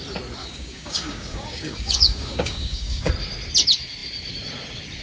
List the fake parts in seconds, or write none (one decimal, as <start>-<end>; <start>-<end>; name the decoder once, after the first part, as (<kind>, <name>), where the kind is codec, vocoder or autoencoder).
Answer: 0.4-3.1 (codec, DAC)